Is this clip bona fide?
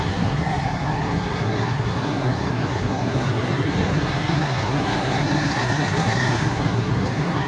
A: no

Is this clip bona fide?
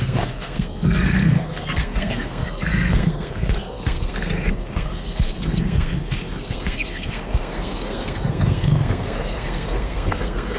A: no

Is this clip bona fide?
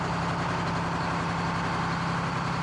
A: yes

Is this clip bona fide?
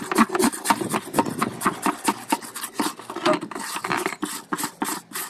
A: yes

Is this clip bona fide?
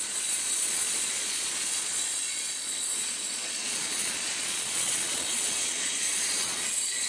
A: no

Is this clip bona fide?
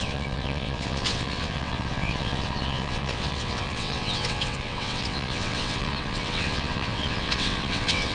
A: no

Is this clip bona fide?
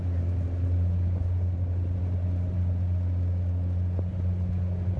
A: yes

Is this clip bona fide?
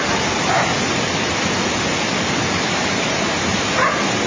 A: yes